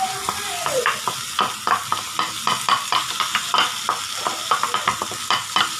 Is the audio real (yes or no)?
yes